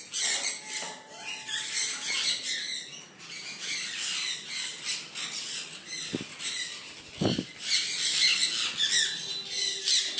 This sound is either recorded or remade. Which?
recorded